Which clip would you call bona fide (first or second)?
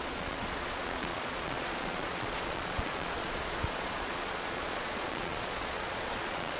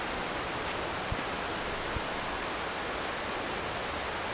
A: second